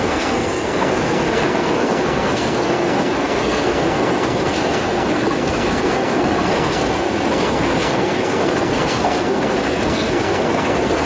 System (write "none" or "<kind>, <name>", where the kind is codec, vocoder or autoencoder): codec, SNAC